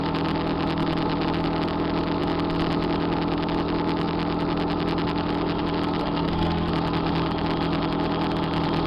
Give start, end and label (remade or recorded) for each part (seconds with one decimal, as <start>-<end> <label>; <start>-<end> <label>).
0.0-6.0 recorded; 6.0-6.7 remade; 6.7-8.9 recorded